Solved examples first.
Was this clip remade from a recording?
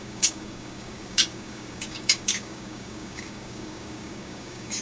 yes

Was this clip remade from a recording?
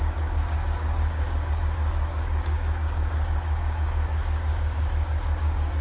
yes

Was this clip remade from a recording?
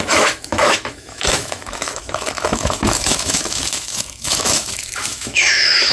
yes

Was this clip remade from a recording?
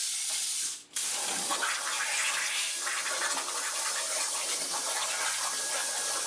yes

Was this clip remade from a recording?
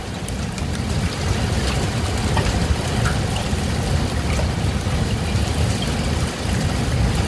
no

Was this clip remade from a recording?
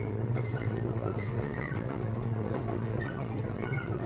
yes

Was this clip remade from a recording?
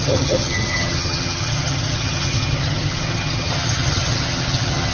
yes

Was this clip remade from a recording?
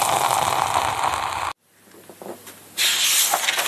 no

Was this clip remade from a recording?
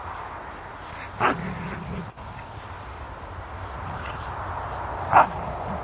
no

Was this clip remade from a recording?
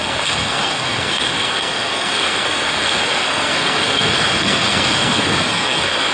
yes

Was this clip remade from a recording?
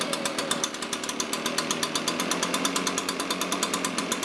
no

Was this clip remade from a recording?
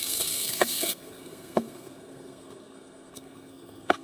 yes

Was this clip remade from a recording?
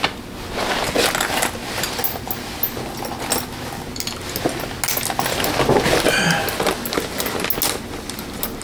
no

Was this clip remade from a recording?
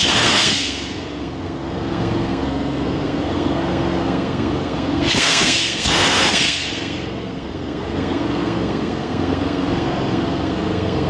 yes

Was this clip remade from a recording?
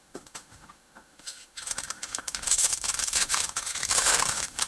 yes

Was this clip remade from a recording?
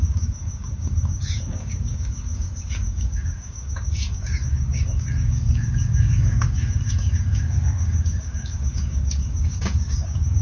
yes